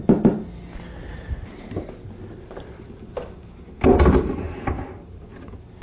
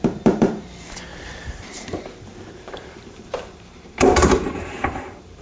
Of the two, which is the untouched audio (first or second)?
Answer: first